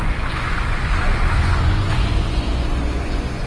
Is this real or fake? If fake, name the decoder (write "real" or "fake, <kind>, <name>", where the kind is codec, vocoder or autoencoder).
fake, vocoder, Vocos